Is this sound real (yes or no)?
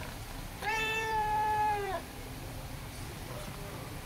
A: no